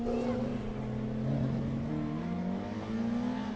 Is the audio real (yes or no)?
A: yes